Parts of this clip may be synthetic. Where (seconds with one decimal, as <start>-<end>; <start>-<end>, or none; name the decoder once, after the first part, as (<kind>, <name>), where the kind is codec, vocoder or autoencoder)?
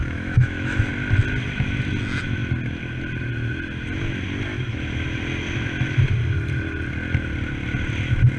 0.0-0.9 (autoencoder, DAC-VAE)